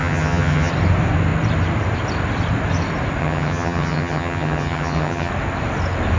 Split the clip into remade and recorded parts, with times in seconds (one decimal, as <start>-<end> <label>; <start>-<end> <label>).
0.0-0.7 remade; 0.7-3.2 recorded; 3.2-5.3 remade; 5.3-6.2 recorded